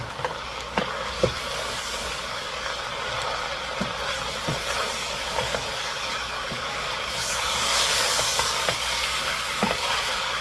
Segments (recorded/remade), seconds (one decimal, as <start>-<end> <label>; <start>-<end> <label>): 0.0-2.7 remade; 2.7-4.9 recorded; 4.9-10.4 remade